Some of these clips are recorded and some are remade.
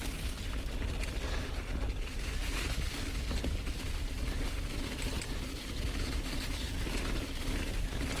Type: recorded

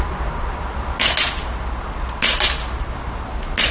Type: recorded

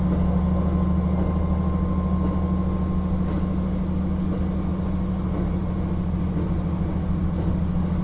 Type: recorded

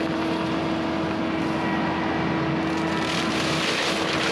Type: recorded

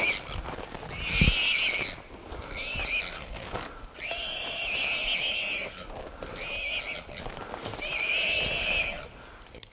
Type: recorded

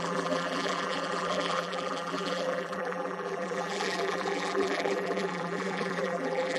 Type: remade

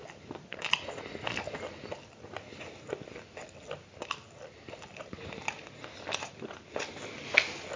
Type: recorded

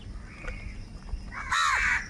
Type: recorded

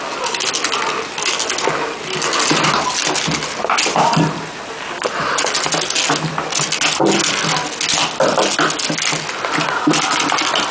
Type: recorded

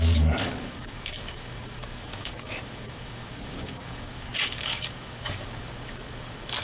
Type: remade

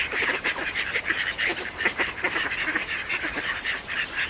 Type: remade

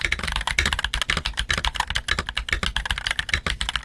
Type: recorded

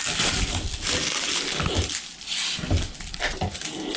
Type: recorded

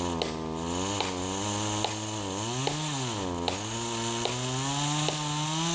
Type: recorded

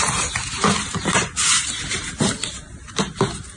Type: recorded